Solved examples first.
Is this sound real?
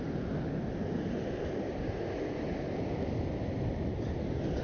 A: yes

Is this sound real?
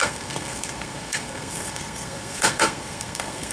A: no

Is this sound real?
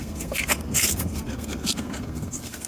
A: no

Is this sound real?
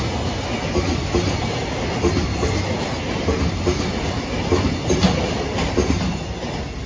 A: yes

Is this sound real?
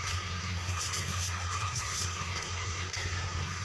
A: no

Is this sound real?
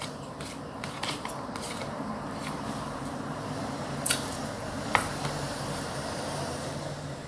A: no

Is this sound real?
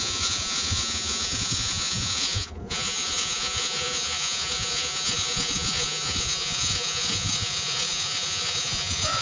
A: no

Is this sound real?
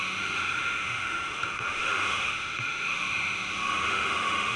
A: no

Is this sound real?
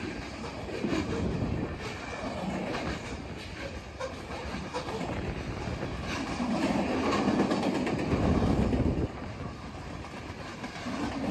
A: yes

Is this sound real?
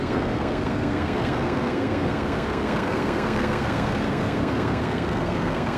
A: no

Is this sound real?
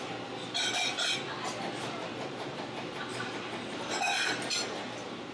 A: yes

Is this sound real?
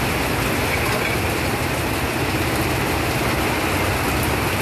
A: yes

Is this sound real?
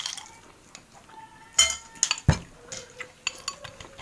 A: yes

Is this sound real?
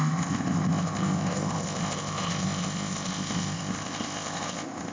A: no